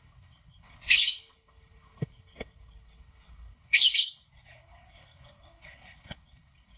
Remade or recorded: remade